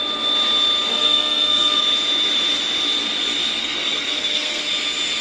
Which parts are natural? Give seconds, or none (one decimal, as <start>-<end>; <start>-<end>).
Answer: 0.0-0.9; 1.8-3.6; 4.6-5.2